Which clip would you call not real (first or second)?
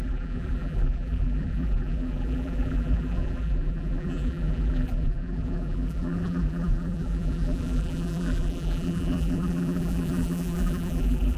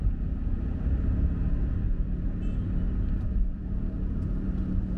first